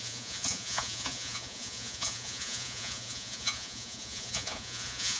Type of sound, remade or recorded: remade